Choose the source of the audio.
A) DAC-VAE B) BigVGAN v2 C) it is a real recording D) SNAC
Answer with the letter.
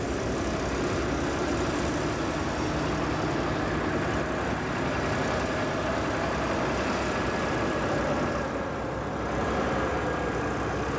C